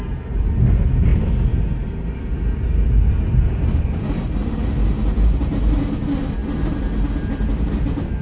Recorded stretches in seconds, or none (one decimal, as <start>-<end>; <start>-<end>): 0.0-8.2